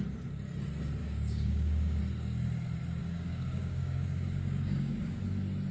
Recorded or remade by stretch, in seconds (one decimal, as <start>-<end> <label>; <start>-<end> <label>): 0.0-1.0 recorded; 1.0-2.0 remade; 2.0-3.0 recorded; 3.0-5.2 remade; 5.2-5.7 recorded